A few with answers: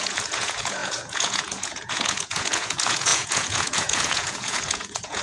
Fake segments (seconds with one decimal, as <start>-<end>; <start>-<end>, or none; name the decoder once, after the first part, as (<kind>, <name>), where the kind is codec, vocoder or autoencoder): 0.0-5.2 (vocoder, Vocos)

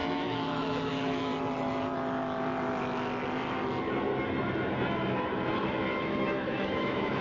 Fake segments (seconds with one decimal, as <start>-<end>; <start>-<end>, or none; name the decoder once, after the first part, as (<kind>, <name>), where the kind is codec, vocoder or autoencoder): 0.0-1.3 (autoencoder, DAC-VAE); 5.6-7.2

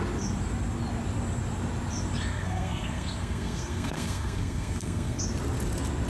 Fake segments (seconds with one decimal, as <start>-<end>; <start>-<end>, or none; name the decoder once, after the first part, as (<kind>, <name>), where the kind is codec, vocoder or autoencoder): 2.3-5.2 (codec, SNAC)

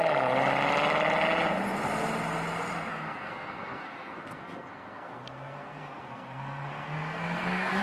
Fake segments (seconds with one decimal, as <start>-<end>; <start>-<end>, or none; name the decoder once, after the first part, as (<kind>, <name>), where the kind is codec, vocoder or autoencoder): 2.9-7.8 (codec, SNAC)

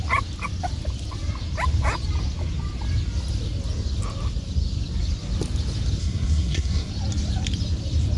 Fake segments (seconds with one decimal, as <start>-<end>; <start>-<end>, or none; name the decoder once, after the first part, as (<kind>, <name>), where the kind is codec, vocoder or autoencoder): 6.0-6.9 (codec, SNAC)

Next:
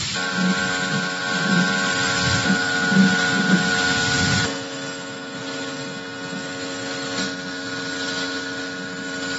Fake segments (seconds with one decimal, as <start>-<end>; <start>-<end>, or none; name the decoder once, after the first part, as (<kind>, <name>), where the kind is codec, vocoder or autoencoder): none

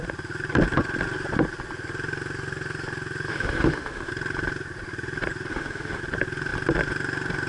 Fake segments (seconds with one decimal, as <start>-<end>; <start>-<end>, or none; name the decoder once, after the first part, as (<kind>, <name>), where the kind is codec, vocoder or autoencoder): 3.3-4.1 (autoencoder, DAC-VAE); 5.5-6.0